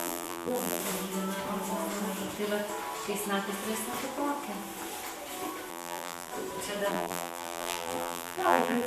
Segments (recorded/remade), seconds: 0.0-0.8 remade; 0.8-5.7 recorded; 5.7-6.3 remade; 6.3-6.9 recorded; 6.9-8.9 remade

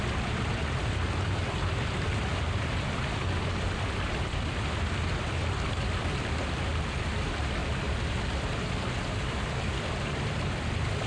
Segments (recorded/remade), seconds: 0.0-7.6 remade; 7.6-8.2 recorded; 8.2-11.1 remade

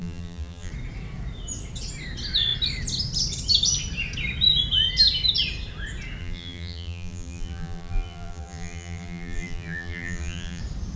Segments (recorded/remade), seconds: 0.0-0.7 remade; 0.7-6.2 recorded; 6.2-10.6 remade; 10.6-11.0 recorded

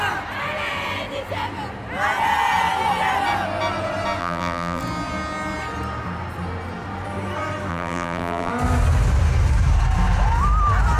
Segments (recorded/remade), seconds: 0.0-4.2 recorded; 4.2-4.8 remade; 4.8-7.7 recorded; 7.7-8.5 remade; 8.5-11.0 recorded

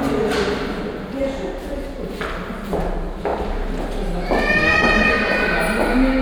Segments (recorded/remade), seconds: 0.0-6.2 recorded

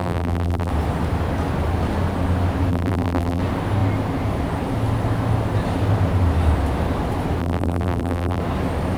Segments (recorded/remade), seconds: 0.0-0.7 remade; 0.7-2.7 recorded; 2.7-3.4 remade; 3.4-7.4 recorded; 7.4-8.4 remade; 8.4-9.0 recorded

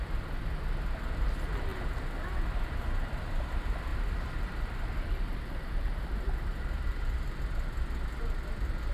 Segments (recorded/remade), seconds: 0.0-3.9 recorded; 3.9-7.4 remade; 7.4-8.9 recorded